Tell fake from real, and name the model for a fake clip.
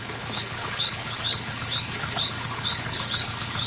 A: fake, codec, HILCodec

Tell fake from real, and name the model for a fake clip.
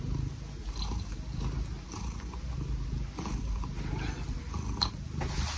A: real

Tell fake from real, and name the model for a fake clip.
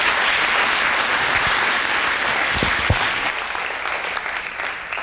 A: fake, vocoder, BigVGAN v2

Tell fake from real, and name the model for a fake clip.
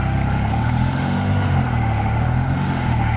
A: fake, autoencoder, DAC-VAE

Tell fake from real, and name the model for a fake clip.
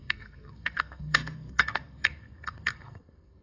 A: fake, codec, SNAC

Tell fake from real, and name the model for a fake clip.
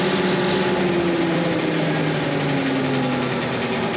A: real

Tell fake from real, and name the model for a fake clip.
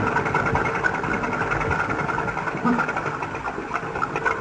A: real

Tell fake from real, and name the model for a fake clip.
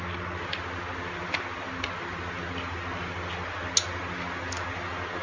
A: real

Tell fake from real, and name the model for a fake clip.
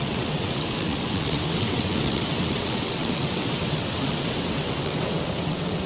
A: fake, vocoder, WaveNeXt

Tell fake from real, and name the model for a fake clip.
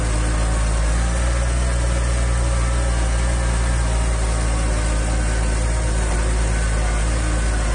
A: real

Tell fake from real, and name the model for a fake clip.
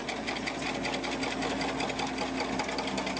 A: real